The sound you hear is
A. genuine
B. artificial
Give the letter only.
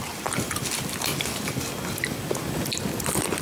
A